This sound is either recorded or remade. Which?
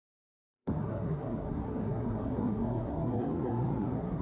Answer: remade